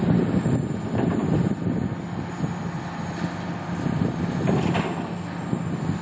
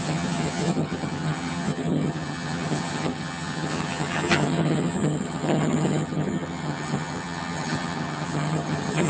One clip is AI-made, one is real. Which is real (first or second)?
first